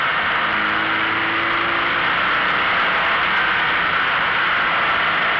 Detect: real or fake real